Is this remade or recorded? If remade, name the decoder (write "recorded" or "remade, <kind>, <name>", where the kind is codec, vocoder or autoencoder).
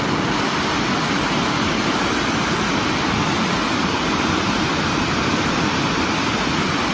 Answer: recorded